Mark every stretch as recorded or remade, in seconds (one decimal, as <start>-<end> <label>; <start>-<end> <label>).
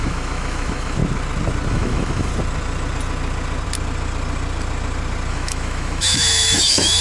0.0-1.0 remade; 1.0-1.7 recorded; 1.7-2.3 remade; 2.3-5.3 recorded; 5.3-7.0 remade